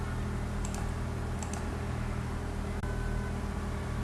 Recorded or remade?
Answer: remade